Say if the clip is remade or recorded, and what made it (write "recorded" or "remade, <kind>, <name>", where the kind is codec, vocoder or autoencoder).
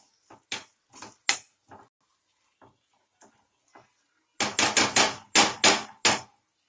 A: recorded